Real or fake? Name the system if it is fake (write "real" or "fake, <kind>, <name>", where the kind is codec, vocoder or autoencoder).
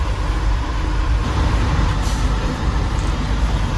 fake, vocoder, BigVGAN v2